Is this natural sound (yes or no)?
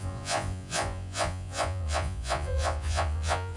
no